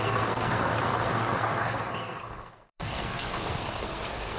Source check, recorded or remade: remade